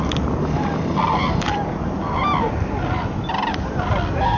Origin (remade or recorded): recorded